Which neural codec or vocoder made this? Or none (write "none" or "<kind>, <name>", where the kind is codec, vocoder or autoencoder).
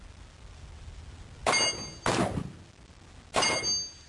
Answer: none